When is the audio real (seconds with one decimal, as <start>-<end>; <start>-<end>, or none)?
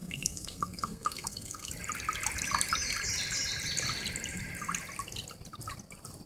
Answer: 1.7-6.3